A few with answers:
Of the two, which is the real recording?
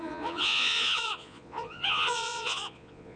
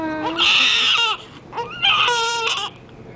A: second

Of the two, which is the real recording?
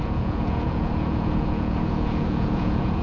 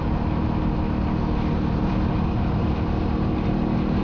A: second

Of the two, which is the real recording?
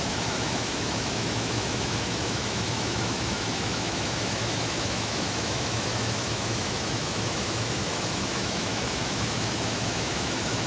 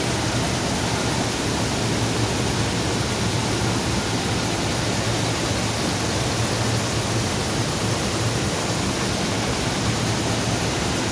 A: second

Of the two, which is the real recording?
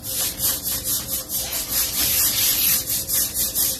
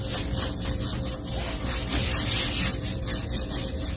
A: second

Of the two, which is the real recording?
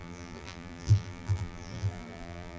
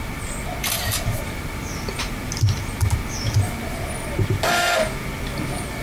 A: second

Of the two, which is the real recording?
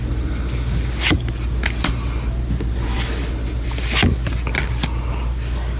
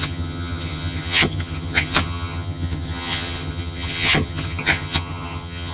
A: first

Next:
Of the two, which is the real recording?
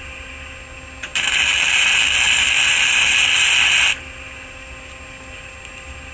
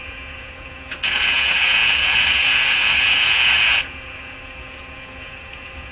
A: first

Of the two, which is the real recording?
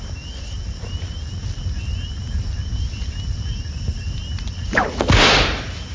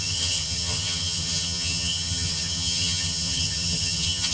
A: first